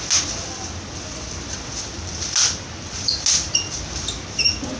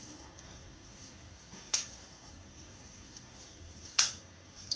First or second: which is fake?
second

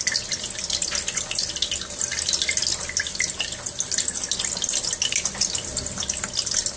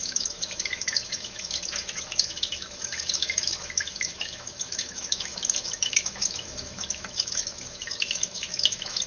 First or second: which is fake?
second